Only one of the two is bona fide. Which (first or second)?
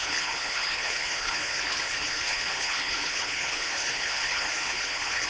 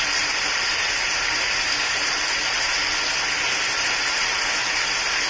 second